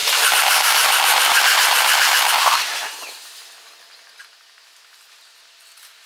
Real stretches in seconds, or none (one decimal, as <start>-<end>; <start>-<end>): 2.6-6.1